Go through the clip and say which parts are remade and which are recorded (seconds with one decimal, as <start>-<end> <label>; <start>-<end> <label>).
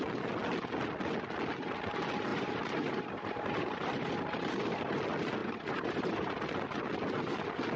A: 0.0-2.3 recorded; 2.3-5.0 remade; 5.0-5.4 recorded; 5.4-6.3 remade; 6.3-7.8 recorded